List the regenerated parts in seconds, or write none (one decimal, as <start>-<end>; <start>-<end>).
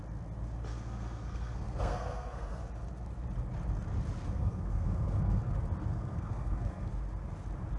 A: 0.7-2.6; 4.2-5.5; 5.9-6.9